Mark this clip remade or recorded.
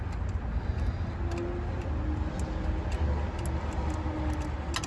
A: recorded